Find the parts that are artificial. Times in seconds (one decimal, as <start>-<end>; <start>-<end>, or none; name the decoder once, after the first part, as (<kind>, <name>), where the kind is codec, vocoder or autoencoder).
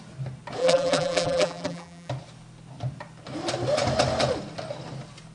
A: 0.6-2.1 (vocoder, BigVGAN v2)